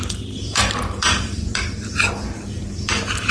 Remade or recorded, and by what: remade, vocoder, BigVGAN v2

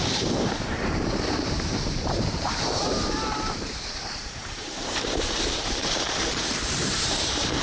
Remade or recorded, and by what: remade, vocoder, BigVGAN v2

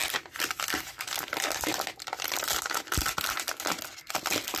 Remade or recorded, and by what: recorded